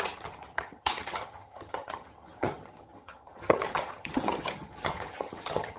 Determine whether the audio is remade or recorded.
remade